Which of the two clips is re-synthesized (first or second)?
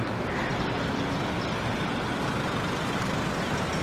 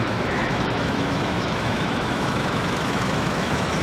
second